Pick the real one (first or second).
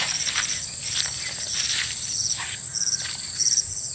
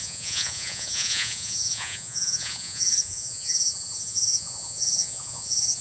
first